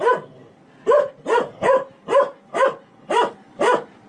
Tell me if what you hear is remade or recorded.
recorded